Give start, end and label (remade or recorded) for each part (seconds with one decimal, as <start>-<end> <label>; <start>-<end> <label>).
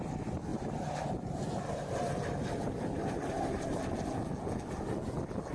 0.0-0.5 recorded; 0.5-3.8 remade; 3.8-5.5 recorded